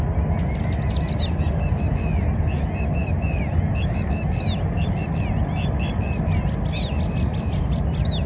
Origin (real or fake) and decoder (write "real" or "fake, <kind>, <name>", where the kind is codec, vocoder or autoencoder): real